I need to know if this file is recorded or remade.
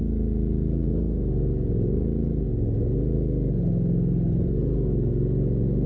recorded